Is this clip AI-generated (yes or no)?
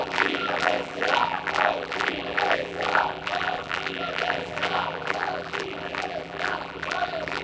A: yes